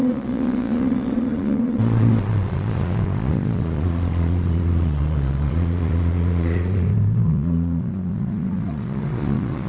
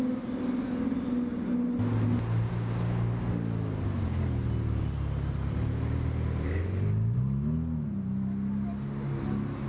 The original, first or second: second